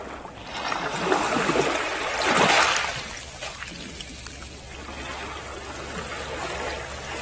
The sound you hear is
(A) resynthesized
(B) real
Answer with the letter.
B